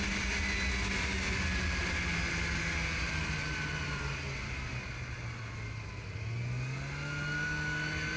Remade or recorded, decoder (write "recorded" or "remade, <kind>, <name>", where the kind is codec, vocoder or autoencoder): recorded